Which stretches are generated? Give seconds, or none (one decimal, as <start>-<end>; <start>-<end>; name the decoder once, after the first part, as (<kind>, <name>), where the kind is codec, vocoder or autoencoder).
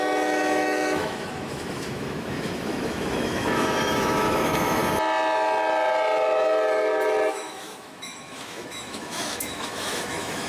0.0-4.8 (autoencoder, DAC-VAE); 7.3-10.5